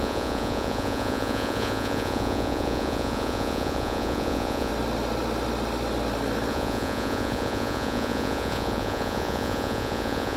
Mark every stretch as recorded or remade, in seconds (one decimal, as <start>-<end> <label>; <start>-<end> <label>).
0.0-4.7 remade; 4.7-6.5 recorded; 6.5-10.4 remade